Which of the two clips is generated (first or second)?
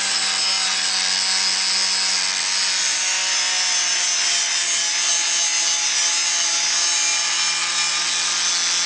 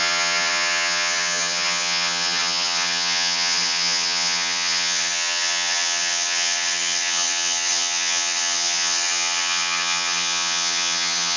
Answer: second